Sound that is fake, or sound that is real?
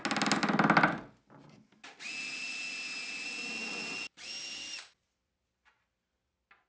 real